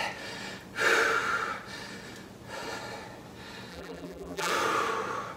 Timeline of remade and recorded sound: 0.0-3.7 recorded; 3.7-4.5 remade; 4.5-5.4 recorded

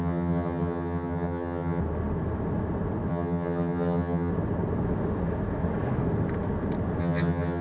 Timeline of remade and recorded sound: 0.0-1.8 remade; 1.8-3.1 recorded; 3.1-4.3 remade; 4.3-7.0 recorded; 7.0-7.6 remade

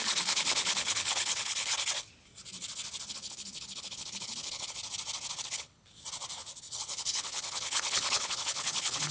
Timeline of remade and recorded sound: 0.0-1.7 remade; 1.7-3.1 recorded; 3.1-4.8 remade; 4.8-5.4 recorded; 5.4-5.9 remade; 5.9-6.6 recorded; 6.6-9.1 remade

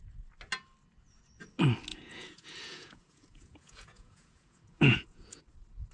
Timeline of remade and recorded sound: 0.0-1.9 recorded; 1.9-5.4 remade; 5.4-5.9 recorded